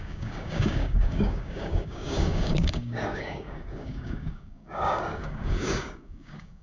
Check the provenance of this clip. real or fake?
fake